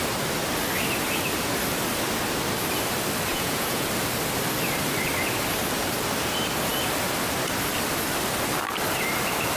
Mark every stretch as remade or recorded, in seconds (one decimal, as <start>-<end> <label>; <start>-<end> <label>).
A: 0.0-3.3 recorded; 3.3-3.9 remade; 3.9-9.6 recorded

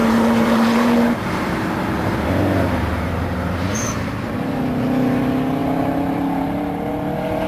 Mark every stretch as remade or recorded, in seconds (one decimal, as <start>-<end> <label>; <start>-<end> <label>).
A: 0.0-4.1 remade; 4.1-5.6 recorded; 5.6-7.5 remade

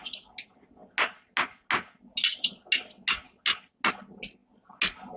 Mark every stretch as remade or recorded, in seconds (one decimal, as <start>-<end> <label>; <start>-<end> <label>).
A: 0.0-5.2 recorded

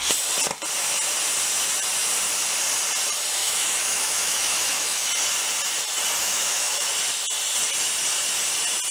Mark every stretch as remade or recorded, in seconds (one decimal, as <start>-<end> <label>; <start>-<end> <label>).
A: 0.0-3.4 recorded; 3.4-5.1 remade; 5.1-6.2 recorded; 6.2-6.9 remade; 6.9-8.9 recorded

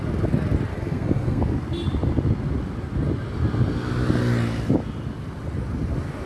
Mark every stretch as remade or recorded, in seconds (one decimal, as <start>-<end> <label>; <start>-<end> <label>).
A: 0.0-0.7 recorded; 0.7-1.4 remade; 1.4-6.3 recorded

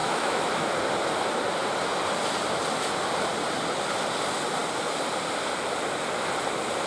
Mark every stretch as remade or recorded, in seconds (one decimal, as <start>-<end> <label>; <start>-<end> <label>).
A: 0.0-0.7 remade; 0.7-6.9 recorded

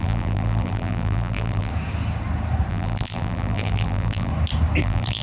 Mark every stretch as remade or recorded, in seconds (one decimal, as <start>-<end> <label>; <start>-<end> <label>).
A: 0.0-1.7 remade; 1.7-2.7 recorded; 2.7-4.3 remade; 4.3-4.8 recorded; 4.8-5.2 remade